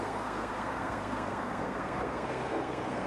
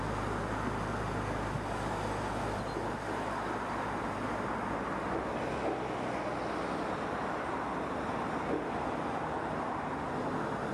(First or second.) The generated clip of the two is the first